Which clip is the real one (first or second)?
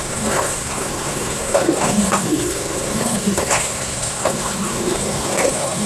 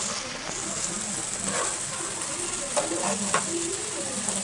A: second